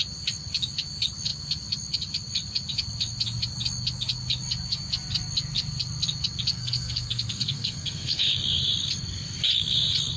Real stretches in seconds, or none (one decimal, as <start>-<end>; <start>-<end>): 0.0-6.5; 8.3-10.2